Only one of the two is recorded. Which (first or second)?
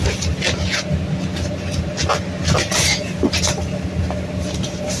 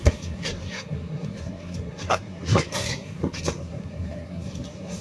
first